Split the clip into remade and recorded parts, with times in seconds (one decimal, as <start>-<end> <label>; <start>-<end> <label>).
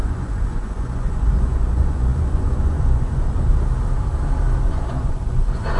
0.0-3.5 remade; 3.5-4.7 recorded; 4.7-5.8 remade